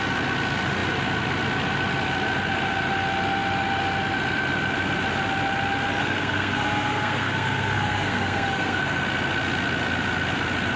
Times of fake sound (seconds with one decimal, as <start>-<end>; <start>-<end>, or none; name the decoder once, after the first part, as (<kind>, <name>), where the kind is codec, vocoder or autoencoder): 6.0-8.8 (codec, SNAC)